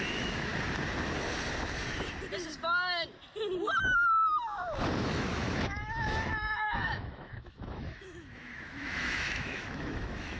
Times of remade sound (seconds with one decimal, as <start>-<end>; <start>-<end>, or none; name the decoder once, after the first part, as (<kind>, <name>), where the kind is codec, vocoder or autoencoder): 0.0-0.5 (autoencoder, DAC-VAE); 5.0-10.4